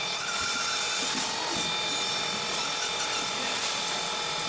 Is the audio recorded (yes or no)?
yes